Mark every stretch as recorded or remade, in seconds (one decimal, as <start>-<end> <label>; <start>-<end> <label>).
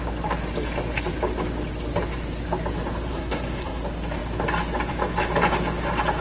0.0-3.1 recorded; 3.1-3.8 remade; 3.8-6.2 recorded